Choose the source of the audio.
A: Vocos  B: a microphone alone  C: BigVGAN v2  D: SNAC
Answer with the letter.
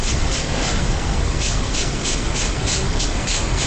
D